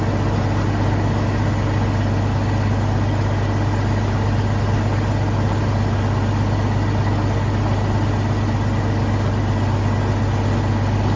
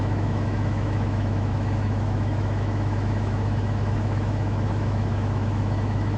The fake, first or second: second